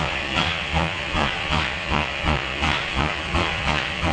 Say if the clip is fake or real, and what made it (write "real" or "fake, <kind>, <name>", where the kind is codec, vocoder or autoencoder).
fake, vocoder, Vocos